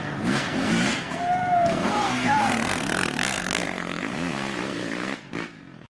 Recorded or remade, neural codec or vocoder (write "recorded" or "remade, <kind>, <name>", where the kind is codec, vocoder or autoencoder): remade, codec, SNAC